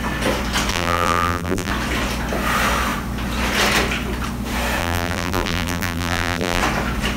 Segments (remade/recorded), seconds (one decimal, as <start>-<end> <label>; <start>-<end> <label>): 0.0-0.7 recorded; 0.7-1.7 remade; 1.7-4.8 recorded; 4.8-6.6 remade; 6.6-7.2 recorded